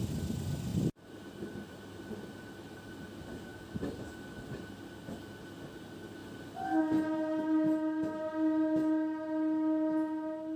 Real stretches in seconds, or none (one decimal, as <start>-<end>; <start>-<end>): 0.0-3.5; 4.1-10.6